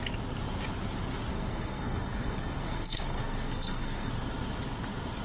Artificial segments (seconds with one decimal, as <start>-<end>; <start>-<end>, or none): 1.3-4.1

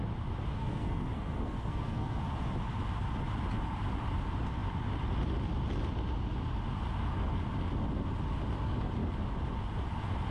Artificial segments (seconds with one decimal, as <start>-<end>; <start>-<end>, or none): 0.5-2.2

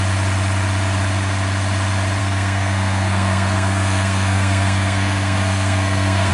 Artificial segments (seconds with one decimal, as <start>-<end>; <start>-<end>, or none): 2.2-6.3

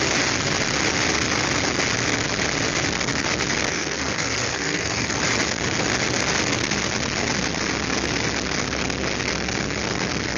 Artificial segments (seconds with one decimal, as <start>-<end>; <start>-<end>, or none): 3.7-5.2

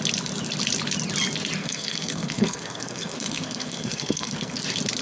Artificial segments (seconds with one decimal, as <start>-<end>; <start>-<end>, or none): 1.6-4.6

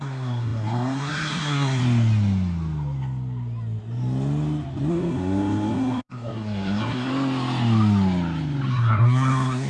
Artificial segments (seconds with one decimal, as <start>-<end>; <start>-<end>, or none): 0.0-1.8; 4.9-7.1; 8.7-9.7

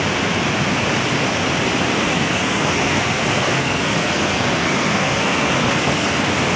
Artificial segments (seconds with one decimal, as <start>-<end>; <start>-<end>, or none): 2.1-6.1

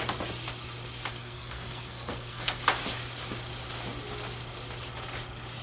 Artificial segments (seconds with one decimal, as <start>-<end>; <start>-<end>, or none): 1.1-2.6